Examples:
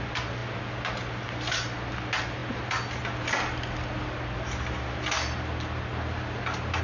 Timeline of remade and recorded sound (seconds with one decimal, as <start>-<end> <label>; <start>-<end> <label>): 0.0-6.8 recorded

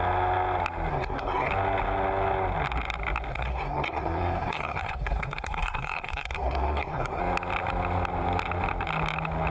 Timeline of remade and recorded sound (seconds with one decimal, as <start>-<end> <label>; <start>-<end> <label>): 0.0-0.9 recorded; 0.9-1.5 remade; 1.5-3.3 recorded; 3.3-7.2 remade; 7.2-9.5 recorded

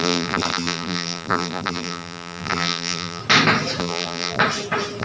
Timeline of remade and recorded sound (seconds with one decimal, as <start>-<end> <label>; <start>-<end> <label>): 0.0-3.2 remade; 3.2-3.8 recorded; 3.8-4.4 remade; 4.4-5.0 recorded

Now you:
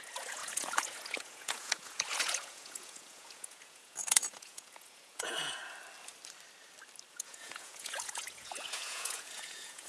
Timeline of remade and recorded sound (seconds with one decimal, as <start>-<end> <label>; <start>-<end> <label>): 0.0-5.6 remade; 5.6-7.1 recorded; 7.1-9.9 remade